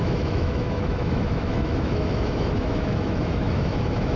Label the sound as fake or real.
fake